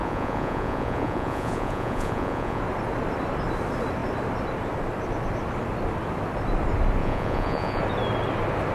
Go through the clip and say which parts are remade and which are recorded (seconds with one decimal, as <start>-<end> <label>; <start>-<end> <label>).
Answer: 0.0-2.6 remade; 2.6-7.0 recorded; 7.0-7.8 remade; 7.8-8.7 recorded